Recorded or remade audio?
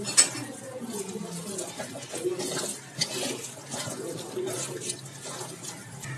recorded